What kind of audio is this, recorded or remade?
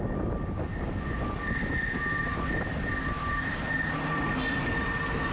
recorded